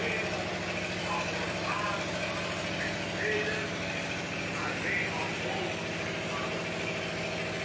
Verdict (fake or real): real